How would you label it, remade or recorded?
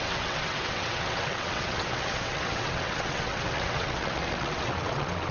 remade